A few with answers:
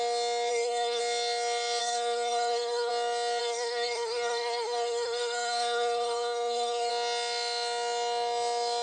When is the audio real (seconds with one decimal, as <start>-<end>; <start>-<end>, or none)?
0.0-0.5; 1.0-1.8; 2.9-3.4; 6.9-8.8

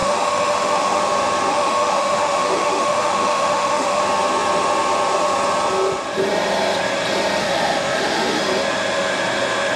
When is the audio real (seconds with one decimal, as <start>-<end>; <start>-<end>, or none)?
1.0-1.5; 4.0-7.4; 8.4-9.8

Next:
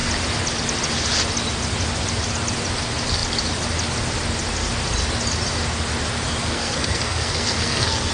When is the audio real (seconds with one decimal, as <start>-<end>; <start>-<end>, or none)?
0.0-6.4

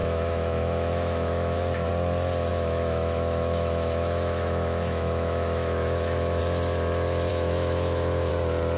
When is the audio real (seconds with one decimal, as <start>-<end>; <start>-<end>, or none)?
1.9-2.5; 6.4-7.3; 8.3-8.8